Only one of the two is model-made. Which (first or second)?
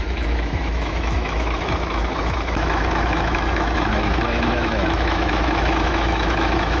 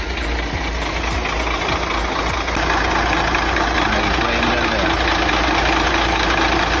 first